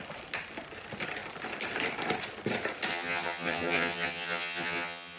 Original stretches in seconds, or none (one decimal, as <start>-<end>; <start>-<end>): 0.0-2.9